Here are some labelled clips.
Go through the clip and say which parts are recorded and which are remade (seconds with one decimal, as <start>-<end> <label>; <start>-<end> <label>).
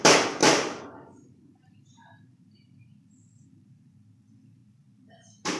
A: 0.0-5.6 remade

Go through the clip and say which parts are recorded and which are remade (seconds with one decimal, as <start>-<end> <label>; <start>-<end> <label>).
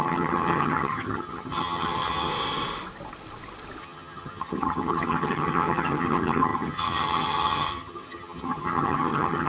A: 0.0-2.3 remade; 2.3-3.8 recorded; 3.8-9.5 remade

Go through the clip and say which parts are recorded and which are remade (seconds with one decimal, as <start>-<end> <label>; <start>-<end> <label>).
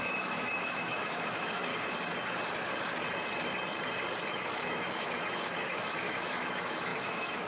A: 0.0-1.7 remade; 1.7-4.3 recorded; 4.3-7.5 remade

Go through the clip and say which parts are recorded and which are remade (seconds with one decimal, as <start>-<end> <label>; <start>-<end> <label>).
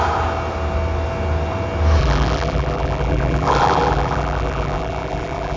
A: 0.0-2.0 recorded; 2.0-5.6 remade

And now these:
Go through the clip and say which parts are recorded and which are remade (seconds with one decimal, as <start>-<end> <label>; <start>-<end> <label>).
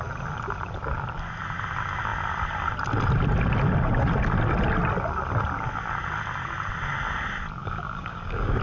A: 0.0-7.6 recorded; 7.6-8.6 remade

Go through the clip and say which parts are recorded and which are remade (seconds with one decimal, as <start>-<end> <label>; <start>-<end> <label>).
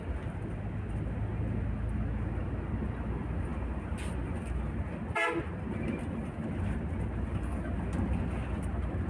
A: 0.0-9.1 recorded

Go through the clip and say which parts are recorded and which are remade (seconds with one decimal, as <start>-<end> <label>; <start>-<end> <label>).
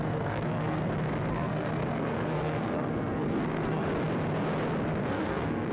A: 0.0-0.9 remade; 0.9-1.3 recorded; 1.3-3.9 remade; 3.9-5.0 recorded; 5.0-5.7 remade